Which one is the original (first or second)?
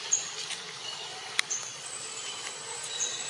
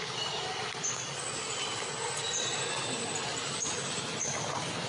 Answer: second